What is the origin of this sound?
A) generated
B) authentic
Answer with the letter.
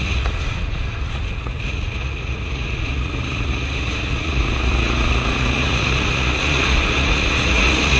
A